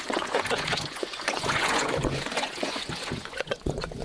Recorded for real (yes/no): no